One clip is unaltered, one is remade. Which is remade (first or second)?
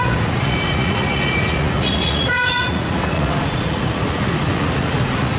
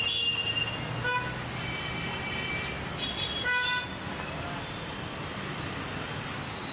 first